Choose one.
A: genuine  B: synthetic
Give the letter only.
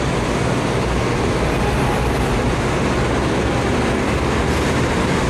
A